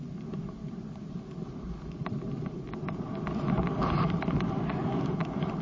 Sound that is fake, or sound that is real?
fake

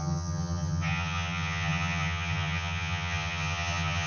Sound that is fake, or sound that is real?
fake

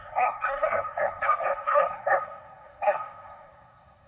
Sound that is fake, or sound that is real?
fake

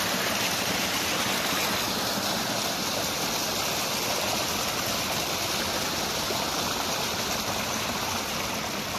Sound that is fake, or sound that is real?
real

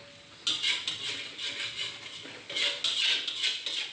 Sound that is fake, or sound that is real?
real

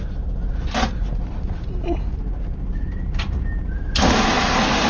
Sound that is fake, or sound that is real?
real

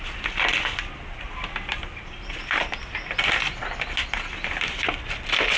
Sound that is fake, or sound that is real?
real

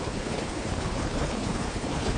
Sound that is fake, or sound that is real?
fake